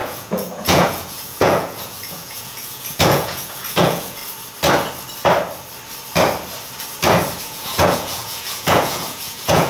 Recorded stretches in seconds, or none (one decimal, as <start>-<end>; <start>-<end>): 4.2-7.4